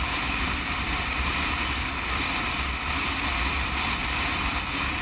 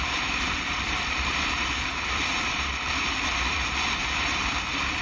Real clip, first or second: first